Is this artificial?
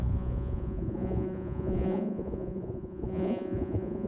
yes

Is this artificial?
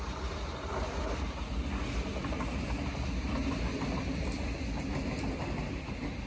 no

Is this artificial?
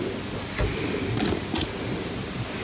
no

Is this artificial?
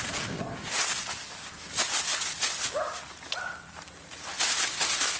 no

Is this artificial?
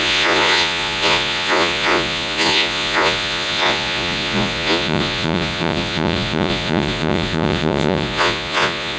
yes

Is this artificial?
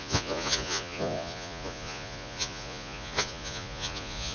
yes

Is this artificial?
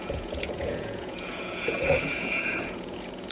yes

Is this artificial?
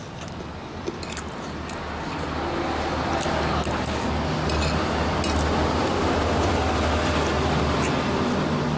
no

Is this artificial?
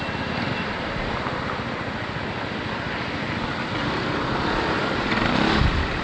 no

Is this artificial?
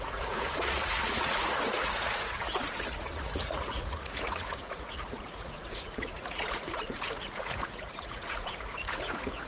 yes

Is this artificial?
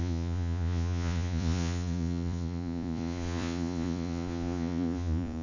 yes